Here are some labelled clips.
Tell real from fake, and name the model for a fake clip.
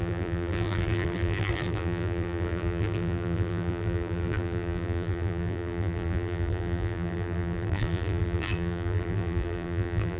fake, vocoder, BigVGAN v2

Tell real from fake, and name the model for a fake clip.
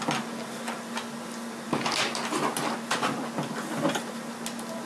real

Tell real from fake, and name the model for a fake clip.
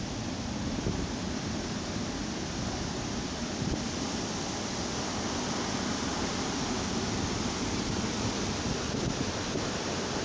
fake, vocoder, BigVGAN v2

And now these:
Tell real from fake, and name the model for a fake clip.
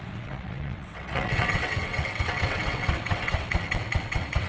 fake, vocoder, WaveNeXt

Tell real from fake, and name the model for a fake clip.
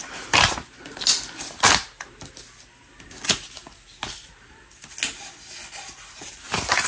real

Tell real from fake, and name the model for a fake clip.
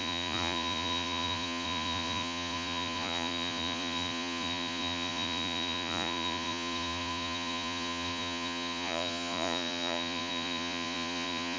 fake, vocoder, Vocos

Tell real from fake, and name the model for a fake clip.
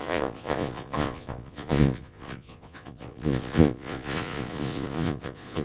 fake, vocoder, Vocos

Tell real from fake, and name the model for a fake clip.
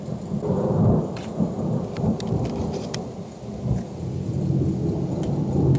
real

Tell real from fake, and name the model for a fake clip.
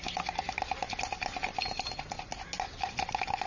real